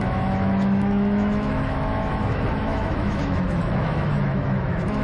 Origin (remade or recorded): remade